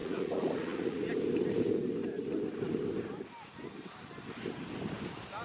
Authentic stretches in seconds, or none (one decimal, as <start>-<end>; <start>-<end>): 1.1-5.4